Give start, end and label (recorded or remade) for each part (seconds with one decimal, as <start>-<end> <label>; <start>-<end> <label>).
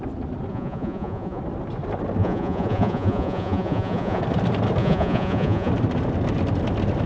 0.0-0.5 recorded; 0.5-1.4 remade; 1.4-2.2 recorded; 2.2-4.2 remade; 4.2-4.8 recorded; 4.8-5.7 remade; 5.7-7.1 recorded